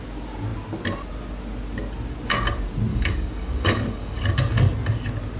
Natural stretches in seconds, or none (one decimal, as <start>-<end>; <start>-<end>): 0.0-2.9; 4.3-5.4